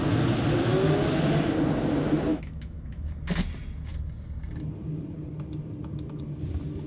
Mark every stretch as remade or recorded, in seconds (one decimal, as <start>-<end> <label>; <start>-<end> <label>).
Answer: 0.0-2.3 recorded; 2.3-3.1 remade; 3.1-6.9 recorded